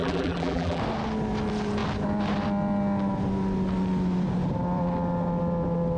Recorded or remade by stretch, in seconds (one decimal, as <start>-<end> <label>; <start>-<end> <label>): 0.0-0.8 remade; 0.8-6.0 recorded